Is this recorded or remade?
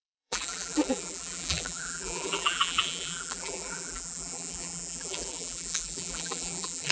remade